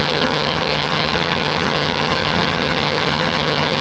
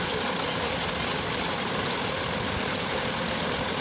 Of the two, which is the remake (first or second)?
first